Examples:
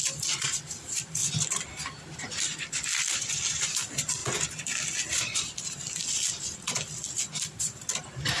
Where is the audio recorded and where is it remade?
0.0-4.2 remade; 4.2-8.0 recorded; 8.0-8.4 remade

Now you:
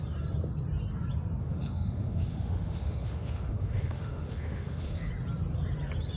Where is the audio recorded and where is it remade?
0.0-1.4 recorded; 1.4-5.1 remade; 5.1-6.2 recorded

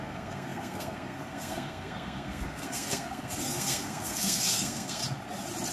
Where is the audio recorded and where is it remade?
0.0-5.0 remade; 5.0-5.7 recorded

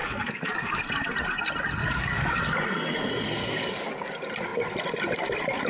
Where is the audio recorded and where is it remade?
0.0-0.8 remade; 0.8-1.8 recorded; 1.8-2.4 remade; 2.4-3.4 recorded; 3.4-4.1 remade; 4.1-5.7 recorded

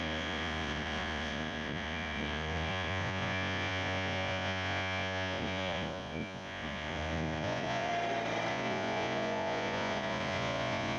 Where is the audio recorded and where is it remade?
0.0-7.9 remade; 7.9-8.5 recorded; 8.5-11.0 remade